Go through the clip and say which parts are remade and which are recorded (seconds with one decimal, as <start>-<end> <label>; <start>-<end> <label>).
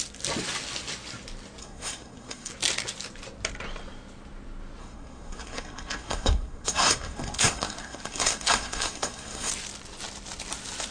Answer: 0.0-1.6 recorded; 1.6-2.5 remade; 2.5-4.8 recorded; 4.8-9.5 remade; 9.5-10.9 recorded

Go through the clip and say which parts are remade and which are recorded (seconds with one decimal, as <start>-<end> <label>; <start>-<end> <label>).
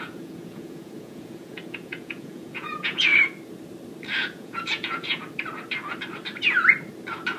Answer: 0.0-3.1 remade; 3.1-4.2 recorded; 4.2-5.2 remade; 5.2-7.4 recorded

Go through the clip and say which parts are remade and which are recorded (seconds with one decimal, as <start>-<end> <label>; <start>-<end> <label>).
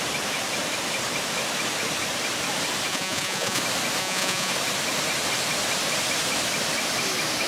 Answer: 0.0-2.9 recorded; 2.9-3.6 remade; 3.6-4.0 recorded; 4.0-4.5 remade; 4.5-7.5 recorded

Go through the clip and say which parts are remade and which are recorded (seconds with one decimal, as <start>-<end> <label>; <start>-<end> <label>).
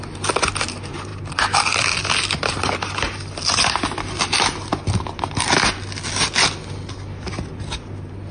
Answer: 0.0-8.3 recorded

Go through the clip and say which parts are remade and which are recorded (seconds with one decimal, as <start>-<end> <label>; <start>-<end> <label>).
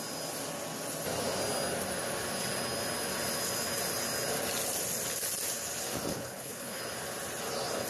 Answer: 0.0-6.1 recorded; 6.1-6.8 remade; 6.8-7.9 recorded